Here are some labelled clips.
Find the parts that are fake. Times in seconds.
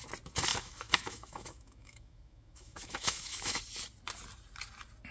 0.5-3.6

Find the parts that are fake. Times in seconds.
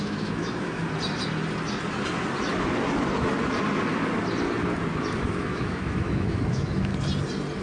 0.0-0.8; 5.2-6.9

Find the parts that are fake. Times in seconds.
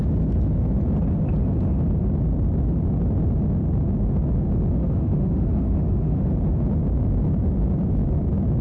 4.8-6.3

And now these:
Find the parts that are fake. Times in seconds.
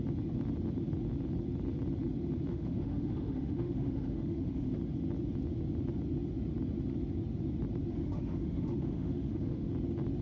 2.5-4.8; 7.9-9.7